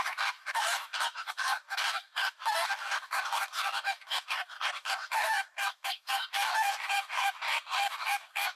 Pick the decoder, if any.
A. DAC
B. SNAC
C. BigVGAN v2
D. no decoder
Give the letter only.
A